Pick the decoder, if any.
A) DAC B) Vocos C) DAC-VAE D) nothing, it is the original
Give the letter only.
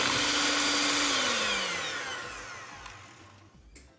D